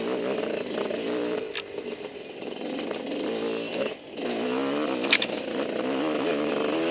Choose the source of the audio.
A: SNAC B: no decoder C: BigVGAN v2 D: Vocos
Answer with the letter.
B